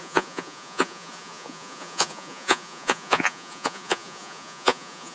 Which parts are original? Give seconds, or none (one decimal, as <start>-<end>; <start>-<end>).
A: none